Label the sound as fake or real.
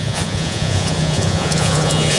fake